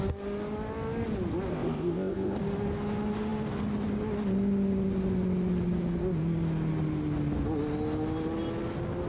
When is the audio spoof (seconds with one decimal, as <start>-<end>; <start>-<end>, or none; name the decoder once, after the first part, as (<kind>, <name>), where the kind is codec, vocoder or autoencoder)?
1.5-2.4 (codec, ZipCodec)